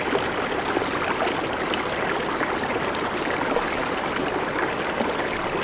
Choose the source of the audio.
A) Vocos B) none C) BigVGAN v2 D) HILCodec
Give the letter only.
B